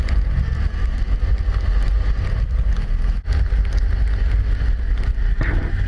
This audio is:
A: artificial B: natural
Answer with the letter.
B